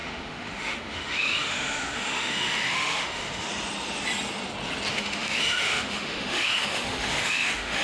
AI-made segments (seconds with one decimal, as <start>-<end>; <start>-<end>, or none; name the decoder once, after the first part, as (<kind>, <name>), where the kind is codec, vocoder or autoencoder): 0.0-3.5 (autoencoder, DAC-VAE); 4.9-7.8